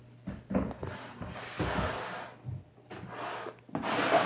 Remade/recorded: recorded